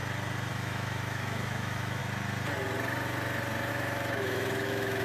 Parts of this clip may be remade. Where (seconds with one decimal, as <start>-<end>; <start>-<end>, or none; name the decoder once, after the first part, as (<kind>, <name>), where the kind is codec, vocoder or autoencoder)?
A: 0.5-2.0 (autoencoder, DAC-VAE); 3.7-5.0

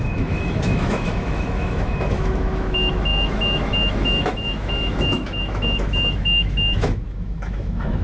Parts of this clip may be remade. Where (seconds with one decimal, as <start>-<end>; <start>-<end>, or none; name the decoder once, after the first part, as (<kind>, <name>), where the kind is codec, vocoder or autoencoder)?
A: 0.0-8.0 (autoencoder, DAC-VAE)

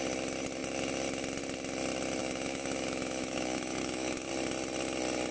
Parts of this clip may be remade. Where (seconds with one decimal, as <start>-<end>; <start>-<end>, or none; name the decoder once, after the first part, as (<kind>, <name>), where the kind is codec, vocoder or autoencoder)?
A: 2.2-4.3 (autoencoder, DAC-VAE)

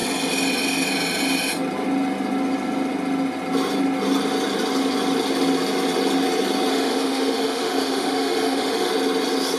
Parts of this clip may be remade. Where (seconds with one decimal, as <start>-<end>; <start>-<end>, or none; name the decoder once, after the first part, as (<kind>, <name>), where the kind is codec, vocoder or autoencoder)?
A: 6.7-8.9 (autoencoder, DAC-VAE)

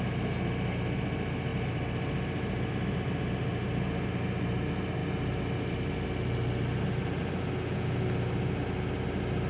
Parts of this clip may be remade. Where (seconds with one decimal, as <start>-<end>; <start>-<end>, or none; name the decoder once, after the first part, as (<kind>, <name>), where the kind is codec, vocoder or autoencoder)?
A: none

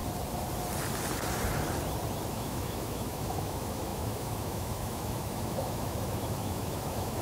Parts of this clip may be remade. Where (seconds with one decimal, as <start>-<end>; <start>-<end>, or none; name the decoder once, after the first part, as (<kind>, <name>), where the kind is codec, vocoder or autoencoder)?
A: 2.3-7.2 (autoencoder, DAC-VAE)

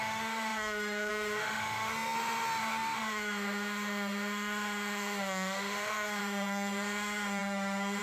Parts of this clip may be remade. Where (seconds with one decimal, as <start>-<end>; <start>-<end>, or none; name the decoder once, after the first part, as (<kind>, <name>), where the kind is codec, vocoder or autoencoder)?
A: 0.0-8.0 (autoencoder, DAC-VAE)